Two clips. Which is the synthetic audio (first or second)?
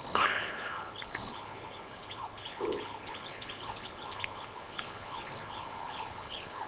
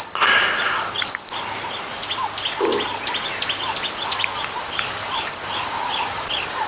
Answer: first